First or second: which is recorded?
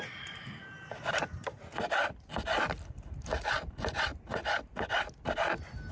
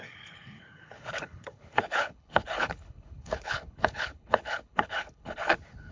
first